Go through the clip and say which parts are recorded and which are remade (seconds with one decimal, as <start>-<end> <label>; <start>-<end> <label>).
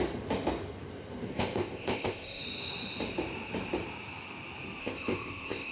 0.0-1.3 recorded; 1.3-2.4 remade; 2.4-4.8 recorded; 4.8-5.7 remade